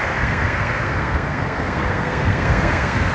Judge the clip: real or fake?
fake